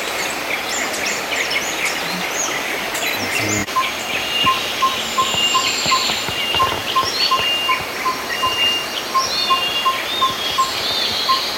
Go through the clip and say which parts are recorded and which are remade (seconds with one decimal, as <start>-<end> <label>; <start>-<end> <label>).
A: 0.0-3.6 recorded; 3.6-6.1 remade; 6.1-6.8 recorded; 6.8-7.3 remade; 7.3-11.6 recorded

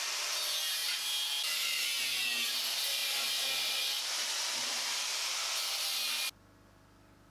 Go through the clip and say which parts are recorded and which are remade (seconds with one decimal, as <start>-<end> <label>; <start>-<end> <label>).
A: 0.0-7.3 recorded